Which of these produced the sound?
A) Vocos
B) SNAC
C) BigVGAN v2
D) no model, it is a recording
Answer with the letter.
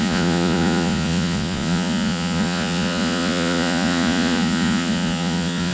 A